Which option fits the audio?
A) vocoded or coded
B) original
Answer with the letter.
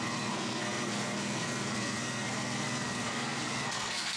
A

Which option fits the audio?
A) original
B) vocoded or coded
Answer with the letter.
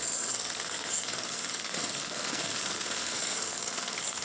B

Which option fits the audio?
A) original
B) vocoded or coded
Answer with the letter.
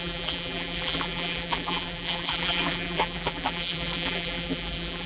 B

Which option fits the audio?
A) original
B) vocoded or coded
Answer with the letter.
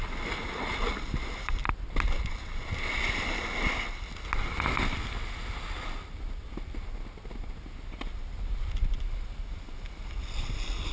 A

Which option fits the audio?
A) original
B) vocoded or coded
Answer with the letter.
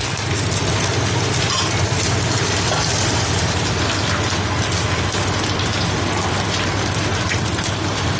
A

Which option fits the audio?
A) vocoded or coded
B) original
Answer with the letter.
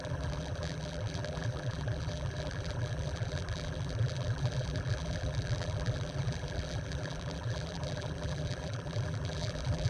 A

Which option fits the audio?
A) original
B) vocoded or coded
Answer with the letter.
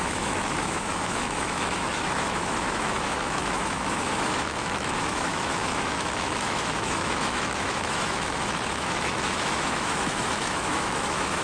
B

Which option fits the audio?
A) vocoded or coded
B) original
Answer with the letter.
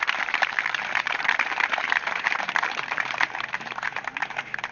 A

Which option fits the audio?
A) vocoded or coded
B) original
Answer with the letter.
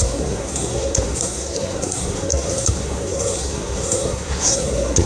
A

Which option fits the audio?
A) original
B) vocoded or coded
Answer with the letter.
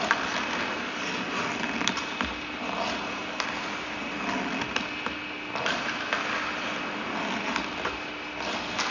A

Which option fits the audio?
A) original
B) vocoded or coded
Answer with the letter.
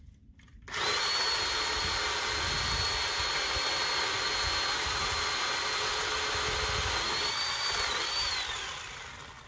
A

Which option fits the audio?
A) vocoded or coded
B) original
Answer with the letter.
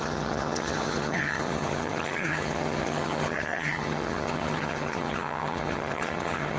A